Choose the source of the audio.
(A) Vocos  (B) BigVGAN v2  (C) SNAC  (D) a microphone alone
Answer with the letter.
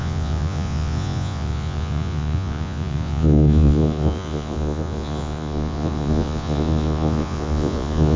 A